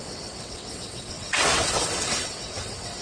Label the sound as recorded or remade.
remade